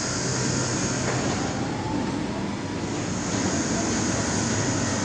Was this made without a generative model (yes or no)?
yes